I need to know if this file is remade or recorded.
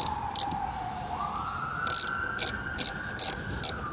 recorded